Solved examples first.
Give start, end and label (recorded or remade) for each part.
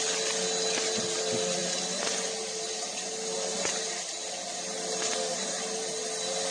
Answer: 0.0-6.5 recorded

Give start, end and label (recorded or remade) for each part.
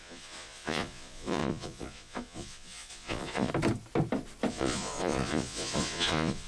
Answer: 0.0-3.5 remade; 3.5-4.5 recorded; 4.5-6.5 remade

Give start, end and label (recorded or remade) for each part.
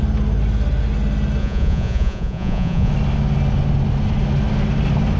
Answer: 0.0-1.4 recorded; 1.4-2.9 remade; 2.9-5.2 recorded